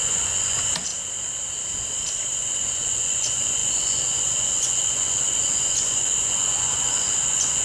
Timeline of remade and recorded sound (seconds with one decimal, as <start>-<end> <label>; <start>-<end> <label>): 0.0-0.9 remade; 0.9-2.3 recorded; 2.3-7.6 remade